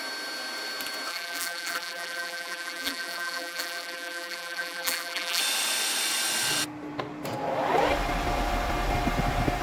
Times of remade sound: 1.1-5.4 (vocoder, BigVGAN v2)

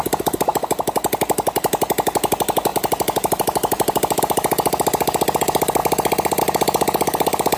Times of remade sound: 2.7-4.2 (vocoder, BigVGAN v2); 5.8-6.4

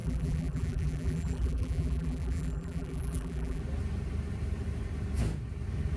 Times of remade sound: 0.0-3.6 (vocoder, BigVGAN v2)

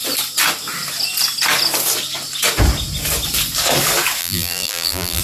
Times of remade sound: 4.2-5.2 (vocoder, BigVGAN v2)

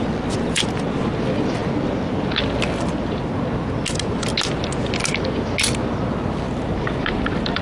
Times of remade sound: none